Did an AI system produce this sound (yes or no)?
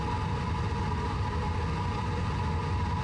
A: no